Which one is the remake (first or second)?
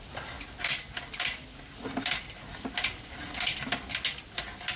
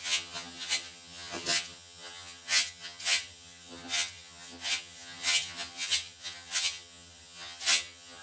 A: second